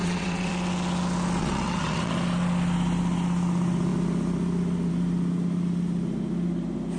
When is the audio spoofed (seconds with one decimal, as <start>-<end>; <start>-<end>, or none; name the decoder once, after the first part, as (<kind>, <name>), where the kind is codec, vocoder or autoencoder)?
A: 0.0-0.5 (vocoder, WaveNeXt); 1.4-2.1